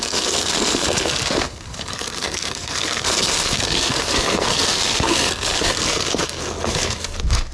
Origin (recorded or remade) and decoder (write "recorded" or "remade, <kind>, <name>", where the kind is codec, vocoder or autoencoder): remade, codec, SNAC